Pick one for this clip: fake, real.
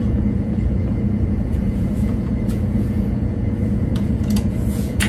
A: fake